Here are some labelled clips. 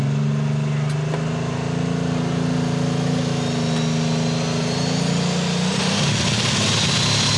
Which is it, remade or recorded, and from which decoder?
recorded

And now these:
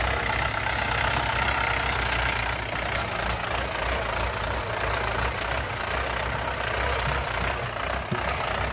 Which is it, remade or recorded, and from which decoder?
recorded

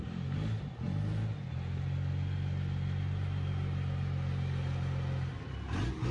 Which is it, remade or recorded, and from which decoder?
recorded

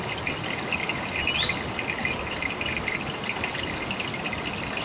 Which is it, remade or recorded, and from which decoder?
recorded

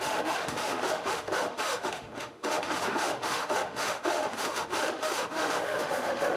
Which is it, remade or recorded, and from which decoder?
remade, autoencoder, DAC-VAE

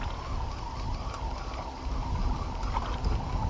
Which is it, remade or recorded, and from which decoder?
recorded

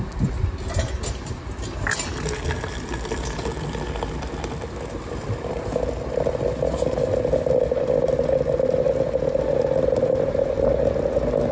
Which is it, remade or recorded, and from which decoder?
recorded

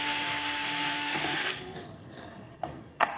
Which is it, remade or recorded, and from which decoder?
remade, codec, SNAC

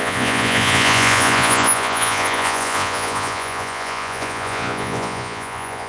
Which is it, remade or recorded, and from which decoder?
remade, vocoder, Vocos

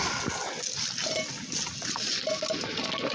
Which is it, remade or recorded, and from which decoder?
recorded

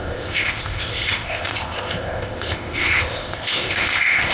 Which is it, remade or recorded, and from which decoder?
remade, codec, ZipCodec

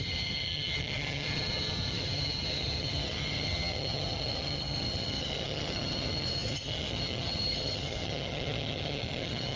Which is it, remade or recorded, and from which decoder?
remade, vocoder, HiFi-GAN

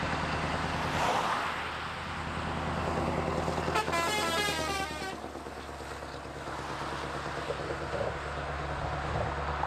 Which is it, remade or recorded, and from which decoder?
recorded